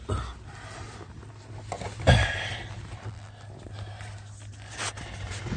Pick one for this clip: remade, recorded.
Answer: recorded